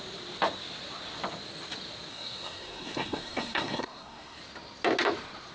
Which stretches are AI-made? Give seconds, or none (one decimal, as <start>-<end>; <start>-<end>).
2.1-4.4